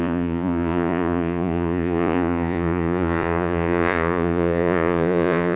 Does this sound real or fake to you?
fake